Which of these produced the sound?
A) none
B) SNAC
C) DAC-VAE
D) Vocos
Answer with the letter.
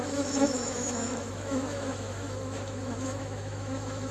C